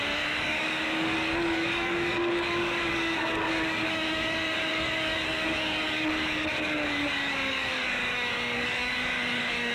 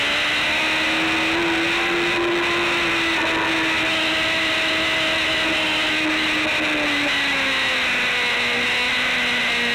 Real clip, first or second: second